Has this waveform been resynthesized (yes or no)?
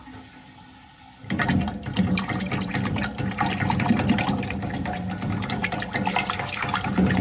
no